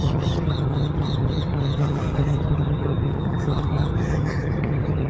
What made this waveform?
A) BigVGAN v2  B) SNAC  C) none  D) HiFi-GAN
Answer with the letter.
D